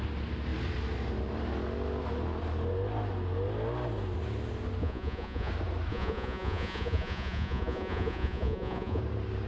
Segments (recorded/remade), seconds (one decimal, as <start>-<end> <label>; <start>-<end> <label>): 0.0-4.8 recorded; 4.8-5.5 remade; 5.5-5.9 recorded; 5.9-9.0 remade; 9.0-9.5 recorded